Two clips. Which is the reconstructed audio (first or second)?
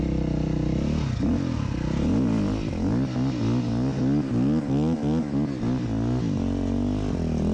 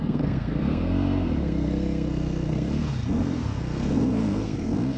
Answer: second